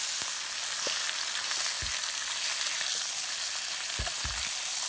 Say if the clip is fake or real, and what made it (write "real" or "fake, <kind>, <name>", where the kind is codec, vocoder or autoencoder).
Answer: real